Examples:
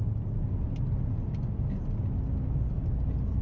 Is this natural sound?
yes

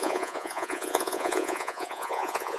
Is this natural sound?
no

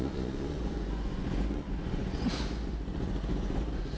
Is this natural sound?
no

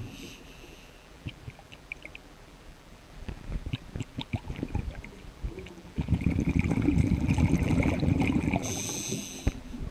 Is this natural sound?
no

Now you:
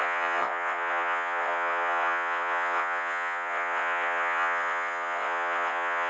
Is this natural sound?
no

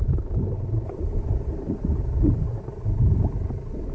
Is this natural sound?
yes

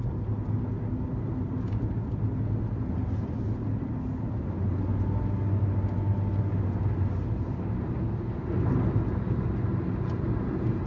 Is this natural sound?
yes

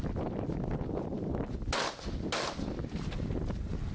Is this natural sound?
yes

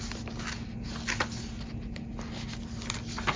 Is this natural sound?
yes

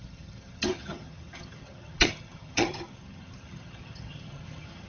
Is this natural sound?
no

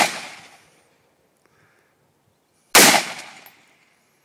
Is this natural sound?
yes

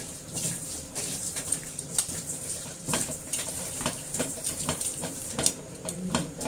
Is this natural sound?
no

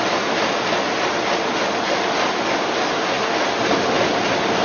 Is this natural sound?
yes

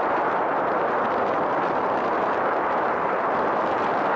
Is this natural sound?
yes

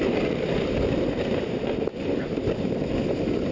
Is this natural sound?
yes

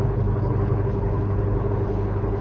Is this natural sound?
no